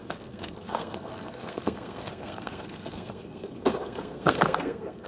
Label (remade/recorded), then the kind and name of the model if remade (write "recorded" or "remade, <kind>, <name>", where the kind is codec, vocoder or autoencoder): remade, codec, SNAC